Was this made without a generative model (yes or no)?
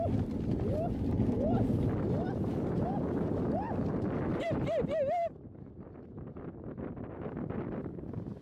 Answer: yes